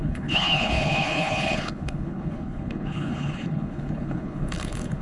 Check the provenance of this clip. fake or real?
fake